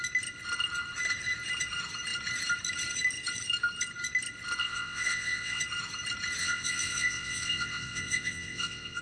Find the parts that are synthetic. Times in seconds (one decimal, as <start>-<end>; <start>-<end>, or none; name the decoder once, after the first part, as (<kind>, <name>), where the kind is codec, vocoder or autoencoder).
4.6-5.6 (vocoder, WaveNeXt); 6.4-9.0